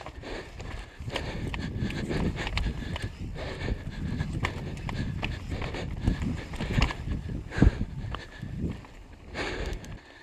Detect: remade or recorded recorded